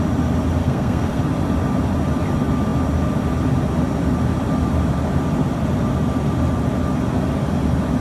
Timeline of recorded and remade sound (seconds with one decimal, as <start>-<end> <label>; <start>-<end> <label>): 0.0-0.6 recorded; 0.6-1.2 remade; 1.2-8.0 recorded